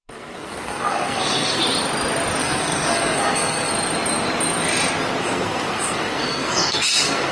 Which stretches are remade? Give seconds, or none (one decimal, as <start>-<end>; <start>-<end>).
0.0-1.6; 2.4-3.7; 5.2-7.3